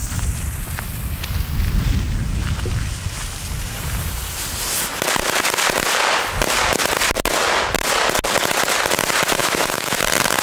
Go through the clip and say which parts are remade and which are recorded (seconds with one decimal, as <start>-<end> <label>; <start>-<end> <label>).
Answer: 0.0-9.4 recorded; 9.4-10.0 remade; 10.0-10.4 recorded